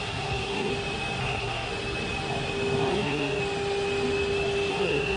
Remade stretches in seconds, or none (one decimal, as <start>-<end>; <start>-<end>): 0.0-0.7; 1.2-1.7; 2.9-3.4; 4.7-5.2